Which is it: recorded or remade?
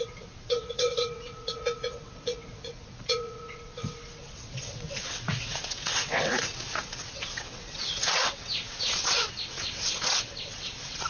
remade